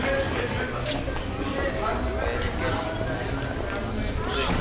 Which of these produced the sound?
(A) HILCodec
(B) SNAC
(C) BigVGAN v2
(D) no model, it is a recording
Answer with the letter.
D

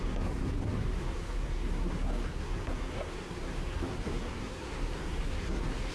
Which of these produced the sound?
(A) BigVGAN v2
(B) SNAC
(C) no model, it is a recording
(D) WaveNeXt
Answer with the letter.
B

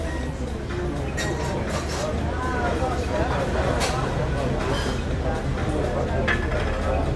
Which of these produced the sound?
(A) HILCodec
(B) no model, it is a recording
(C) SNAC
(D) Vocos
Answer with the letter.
B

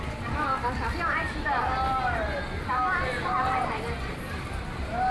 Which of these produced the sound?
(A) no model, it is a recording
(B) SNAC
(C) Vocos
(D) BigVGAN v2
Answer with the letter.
A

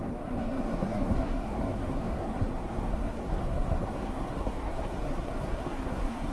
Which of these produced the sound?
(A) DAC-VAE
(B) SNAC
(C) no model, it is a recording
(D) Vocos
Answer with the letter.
B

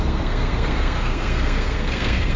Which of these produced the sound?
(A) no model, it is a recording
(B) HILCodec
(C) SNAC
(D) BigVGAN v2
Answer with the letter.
C